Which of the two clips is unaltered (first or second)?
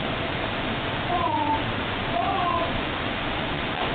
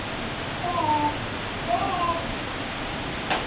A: second